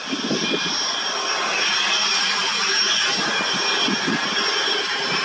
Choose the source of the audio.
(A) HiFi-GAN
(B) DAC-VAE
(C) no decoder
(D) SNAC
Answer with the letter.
C